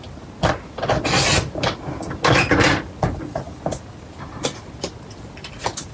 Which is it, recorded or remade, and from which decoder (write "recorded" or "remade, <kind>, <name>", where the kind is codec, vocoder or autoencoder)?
recorded